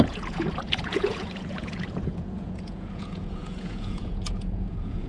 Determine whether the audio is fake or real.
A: fake